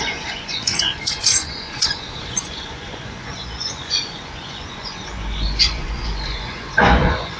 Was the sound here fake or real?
fake